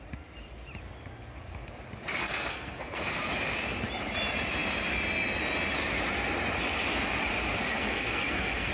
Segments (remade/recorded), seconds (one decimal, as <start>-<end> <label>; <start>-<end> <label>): 0.0-2.2 recorded; 2.2-3.2 remade; 3.2-7.7 recorded; 7.7-8.7 remade